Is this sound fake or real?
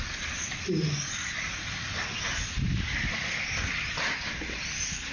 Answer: real